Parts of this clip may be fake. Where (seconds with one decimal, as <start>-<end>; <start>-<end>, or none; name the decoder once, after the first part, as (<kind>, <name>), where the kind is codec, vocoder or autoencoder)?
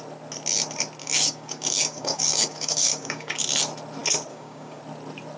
1.0-3.4 (codec, DAC); 4.3-4.8